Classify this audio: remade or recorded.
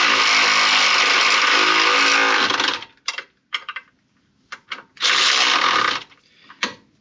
recorded